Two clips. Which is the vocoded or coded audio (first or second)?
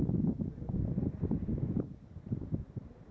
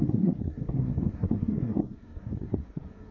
second